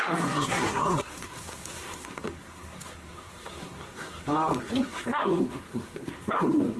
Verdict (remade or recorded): remade